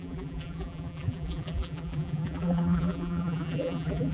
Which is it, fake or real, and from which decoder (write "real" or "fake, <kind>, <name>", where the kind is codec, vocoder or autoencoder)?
fake, vocoder, BigVGAN v2